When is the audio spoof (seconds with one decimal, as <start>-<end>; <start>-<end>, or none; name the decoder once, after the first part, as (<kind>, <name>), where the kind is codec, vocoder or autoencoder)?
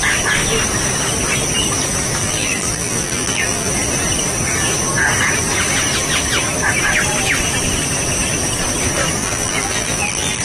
2.2-3.7 (vocoder, BigVGAN v2); 9.2-10.4